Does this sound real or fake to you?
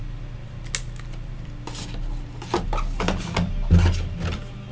real